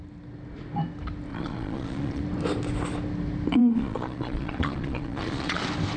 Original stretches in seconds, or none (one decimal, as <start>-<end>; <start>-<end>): 0.0-1.3; 2.2-3.6; 5.6-6.0